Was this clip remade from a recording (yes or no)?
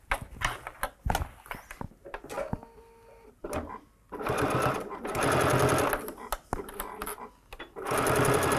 no